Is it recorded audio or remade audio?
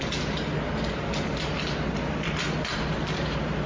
recorded